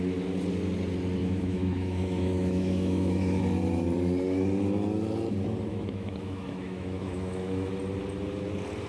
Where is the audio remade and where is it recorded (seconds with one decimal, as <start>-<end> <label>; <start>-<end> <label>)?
0.0-1.2 recorded; 1.2-3.4 remade; 3.4-5.7 recorded; 5.7-7.7 remade; 7.7-8.9 recorded